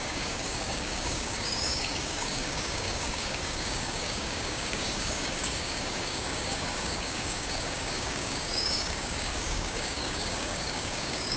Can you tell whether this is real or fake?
fake